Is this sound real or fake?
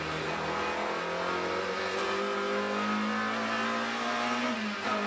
real